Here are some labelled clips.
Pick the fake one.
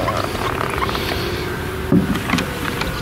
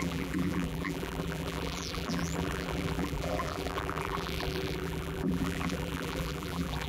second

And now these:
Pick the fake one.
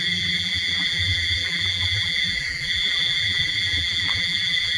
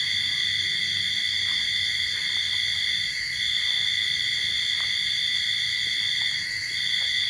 first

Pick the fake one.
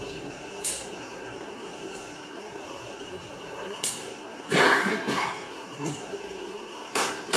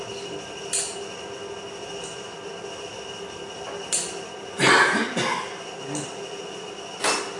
first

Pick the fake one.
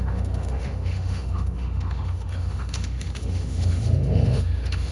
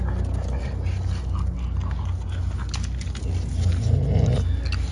first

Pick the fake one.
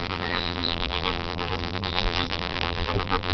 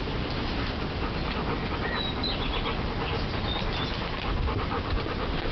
first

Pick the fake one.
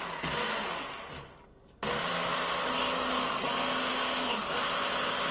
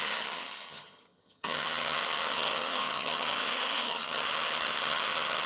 second